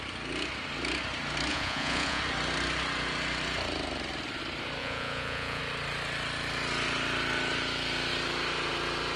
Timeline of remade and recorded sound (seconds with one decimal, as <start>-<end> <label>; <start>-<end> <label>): 0.0-1.5 recorded; 1.5-2.2 remade; 2.2-4.8 recorded; 4.8-5.6 remade; 5.6-9.2 recorded